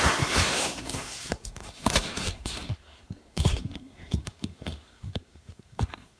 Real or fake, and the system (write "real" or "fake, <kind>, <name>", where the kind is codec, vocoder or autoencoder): fake, codec, SNAC